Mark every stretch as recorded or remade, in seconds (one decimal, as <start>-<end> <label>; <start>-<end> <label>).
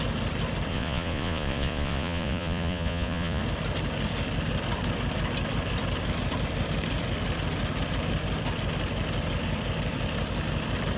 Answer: 0.0-0.7 recorded; 0.7-3.4 remade; 3.4-11.0 recorded